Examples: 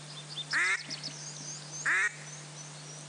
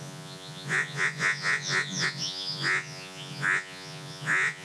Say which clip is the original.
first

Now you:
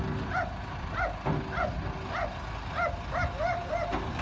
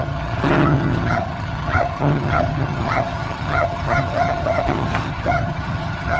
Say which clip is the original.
first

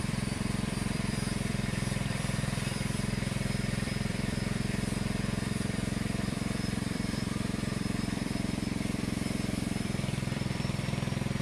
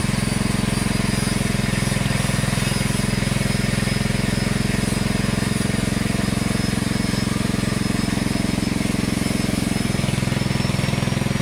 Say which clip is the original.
second